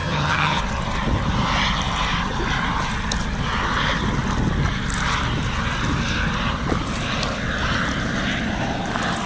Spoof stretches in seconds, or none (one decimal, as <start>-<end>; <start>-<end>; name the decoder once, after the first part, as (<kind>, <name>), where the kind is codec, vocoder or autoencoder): 0.0-0.6 (vocoder, HiFi-GAN)